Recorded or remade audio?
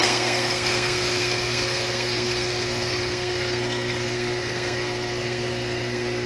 remade